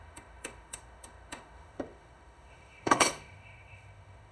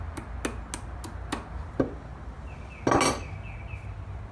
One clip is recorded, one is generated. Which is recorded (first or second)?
second